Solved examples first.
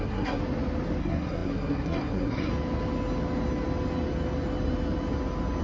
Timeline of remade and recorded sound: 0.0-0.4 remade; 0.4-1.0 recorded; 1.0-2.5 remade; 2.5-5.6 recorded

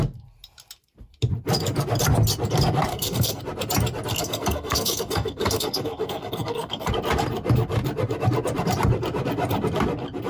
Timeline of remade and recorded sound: 0.0-2.9 recorded; 2.9-3.4 remade; 3.4-4.1 recorded; 4.1-6.9 remade; 6.9-10.3 recorded

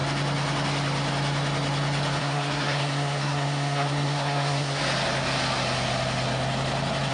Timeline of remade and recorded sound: 0.0-2.2 recorded; 2.2-4.8 remade; 4.8-7.1 recorded